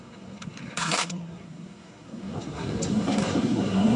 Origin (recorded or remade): remade